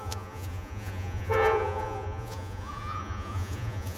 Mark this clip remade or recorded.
remade